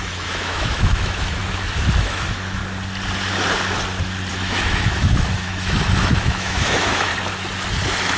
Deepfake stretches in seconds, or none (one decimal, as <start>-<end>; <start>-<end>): 0.0-1.4; 2.0-2.6; 4.3-7.1